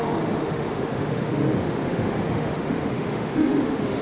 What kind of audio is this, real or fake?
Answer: fake